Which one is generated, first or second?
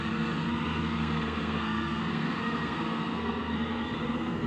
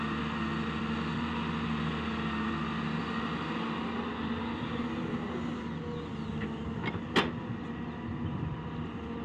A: first